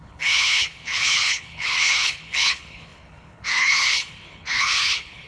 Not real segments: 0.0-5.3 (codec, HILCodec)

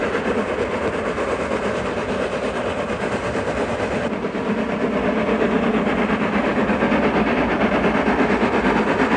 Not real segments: none

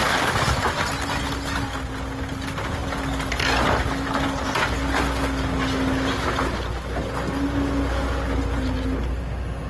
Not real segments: none